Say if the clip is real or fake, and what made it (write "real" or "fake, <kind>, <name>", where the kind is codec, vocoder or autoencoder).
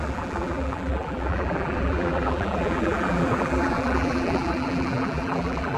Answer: fake, vocoder, BigVGAN v2